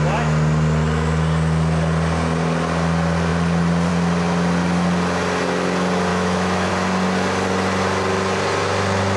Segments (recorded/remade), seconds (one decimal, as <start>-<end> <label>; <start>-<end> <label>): 0.0-6.1 recorded; 6.1-6.7 remade; 6.7-9.2 recorded